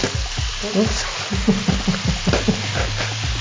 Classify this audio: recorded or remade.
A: recorded